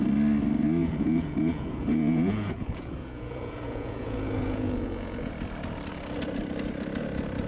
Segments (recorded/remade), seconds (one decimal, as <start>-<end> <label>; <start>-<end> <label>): 0.0-0.8 recorded; 0.8-5.3 remade; 5.3-7.5 recorded